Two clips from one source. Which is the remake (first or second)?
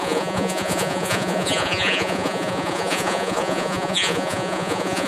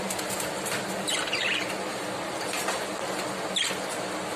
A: first